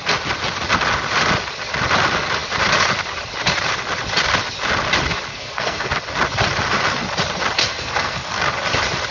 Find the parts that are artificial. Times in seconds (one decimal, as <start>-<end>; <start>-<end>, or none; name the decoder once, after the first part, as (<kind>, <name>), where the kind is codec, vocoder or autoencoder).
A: 5.3-5.9 (codec, SNAC); 7.6-8.4